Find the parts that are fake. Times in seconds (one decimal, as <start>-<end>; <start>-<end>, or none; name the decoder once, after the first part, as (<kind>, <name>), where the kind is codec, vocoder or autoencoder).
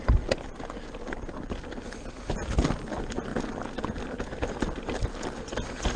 none